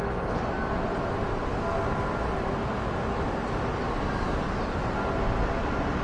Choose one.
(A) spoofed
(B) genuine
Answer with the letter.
B